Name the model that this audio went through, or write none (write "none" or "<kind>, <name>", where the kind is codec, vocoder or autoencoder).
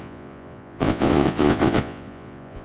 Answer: vocoder, Vocos